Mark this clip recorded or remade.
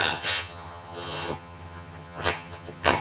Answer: remade